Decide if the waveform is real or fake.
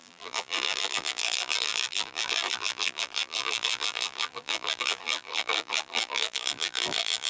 fake